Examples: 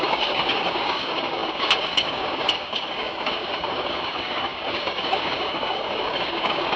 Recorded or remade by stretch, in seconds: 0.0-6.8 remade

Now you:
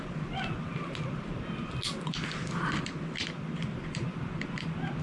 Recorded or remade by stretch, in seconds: 0.0-5.0 recorded

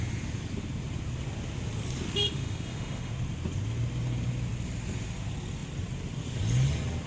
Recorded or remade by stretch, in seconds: 0.0-2.3 recorded; 2.3-3.1 remade; 3.1-7.1 recorded

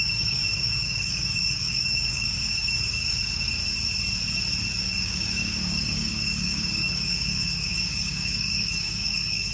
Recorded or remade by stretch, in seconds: 0.0-3.6 remade; 3.6-4.8 recorded; 4.8-9.5 remade

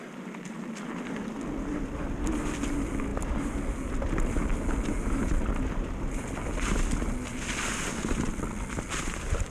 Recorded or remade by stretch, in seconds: 0.0-9.5 recorded